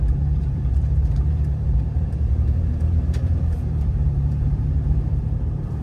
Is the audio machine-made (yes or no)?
yes